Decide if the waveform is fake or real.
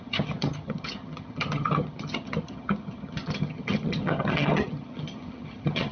fake